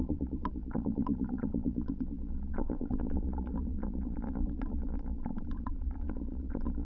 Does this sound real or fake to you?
fake